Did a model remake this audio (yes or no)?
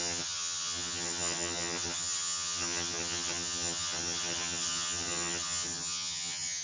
yes